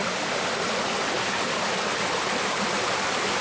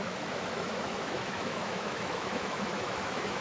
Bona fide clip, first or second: first